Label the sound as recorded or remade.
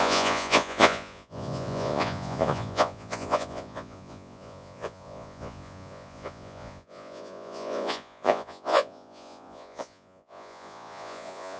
remade